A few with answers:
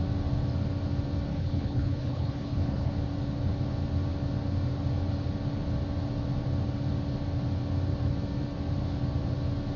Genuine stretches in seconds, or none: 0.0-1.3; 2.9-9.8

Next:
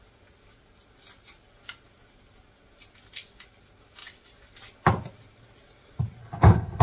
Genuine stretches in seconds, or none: 0.0-6.2

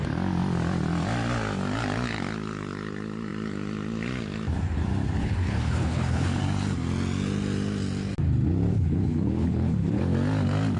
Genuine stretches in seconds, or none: 0.0-5.2; 6.4-8.7; 10.0-10.8

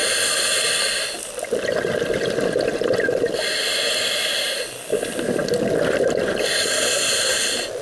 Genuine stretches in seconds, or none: 0.0-7.8

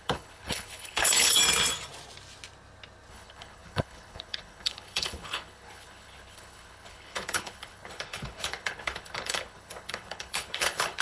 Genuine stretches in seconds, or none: 1.4-3.1